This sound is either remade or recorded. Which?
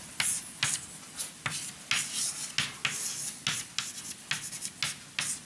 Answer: recorded